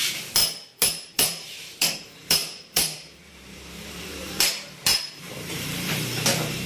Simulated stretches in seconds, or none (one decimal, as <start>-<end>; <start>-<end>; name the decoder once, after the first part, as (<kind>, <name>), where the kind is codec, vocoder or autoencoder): 0.0-0.4 (vocoder, BigVGAN v2); 1.1-4.9; 5.5-6.7

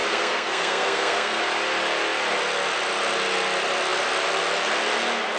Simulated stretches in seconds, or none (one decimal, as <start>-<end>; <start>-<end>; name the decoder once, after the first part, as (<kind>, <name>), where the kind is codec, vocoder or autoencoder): 0.0-1.4 (codec, SNAC)

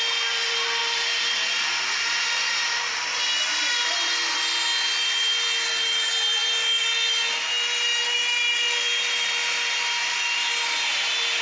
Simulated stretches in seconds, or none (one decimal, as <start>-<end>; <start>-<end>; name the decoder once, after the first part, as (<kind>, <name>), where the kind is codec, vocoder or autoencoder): none

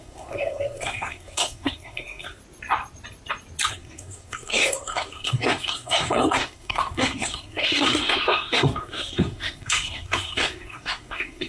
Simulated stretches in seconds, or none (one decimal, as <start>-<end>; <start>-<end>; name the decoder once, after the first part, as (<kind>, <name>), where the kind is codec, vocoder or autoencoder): 0.0-2.4 (codec, SNAC); 3.7-11.5

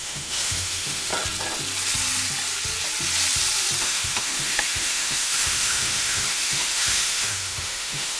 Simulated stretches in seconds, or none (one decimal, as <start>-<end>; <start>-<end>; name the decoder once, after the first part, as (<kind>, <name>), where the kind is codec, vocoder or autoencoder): 0.0-1.1 (autoencoder, DAC-VAE); 3.8-8.2